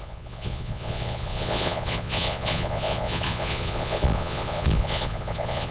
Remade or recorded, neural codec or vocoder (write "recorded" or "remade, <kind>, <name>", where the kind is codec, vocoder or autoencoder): remade, vocoder, Vocos